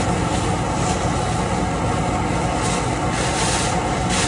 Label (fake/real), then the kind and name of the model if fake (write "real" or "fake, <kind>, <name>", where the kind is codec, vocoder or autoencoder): real